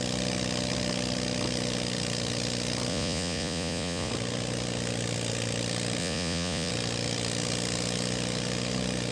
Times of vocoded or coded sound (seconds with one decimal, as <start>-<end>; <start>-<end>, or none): 2.9-4.1; 6.0-6.7